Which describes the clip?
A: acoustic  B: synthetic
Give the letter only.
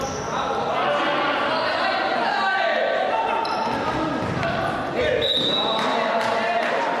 A